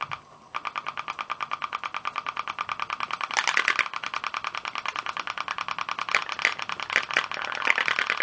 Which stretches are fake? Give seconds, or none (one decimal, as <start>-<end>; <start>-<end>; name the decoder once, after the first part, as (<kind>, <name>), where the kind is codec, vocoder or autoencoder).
none